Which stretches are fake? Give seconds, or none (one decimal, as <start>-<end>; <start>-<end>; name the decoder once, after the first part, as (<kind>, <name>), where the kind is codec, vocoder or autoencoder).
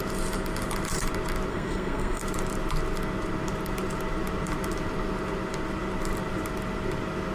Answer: 1.5-2.2 (codec, SNAC)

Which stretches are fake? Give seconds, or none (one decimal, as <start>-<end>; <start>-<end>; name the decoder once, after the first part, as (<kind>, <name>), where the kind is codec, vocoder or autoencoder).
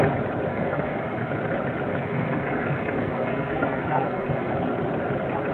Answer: 0.5-1.3 (codec, SNAC); 1.9-4.6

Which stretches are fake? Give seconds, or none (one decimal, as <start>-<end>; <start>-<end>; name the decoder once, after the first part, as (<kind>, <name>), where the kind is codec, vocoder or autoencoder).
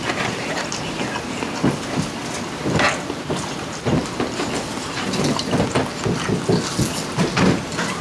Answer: none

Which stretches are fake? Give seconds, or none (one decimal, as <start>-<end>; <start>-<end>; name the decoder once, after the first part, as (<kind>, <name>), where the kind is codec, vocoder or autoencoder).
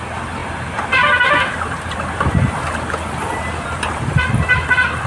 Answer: none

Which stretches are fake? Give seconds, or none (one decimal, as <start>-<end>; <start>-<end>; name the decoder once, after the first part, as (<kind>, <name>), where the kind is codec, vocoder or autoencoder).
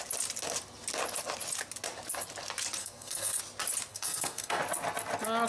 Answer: 2.8-3.4 (codec, SNAC); 3.9-4.6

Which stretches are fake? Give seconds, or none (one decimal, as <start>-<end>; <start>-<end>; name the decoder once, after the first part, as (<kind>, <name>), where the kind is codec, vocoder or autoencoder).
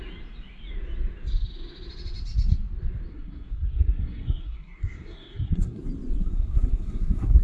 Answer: 3.1-5.8 (codec, SNAC); 6.2-7.4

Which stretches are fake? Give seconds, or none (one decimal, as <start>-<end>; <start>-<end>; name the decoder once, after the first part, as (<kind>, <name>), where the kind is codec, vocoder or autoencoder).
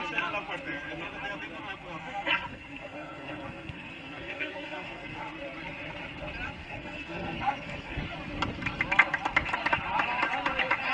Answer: 2.5-5.2 (codec, SNAC); 6.6-8.0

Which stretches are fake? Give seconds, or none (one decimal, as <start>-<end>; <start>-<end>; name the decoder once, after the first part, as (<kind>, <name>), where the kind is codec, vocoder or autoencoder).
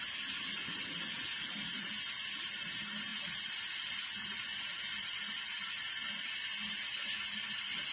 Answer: none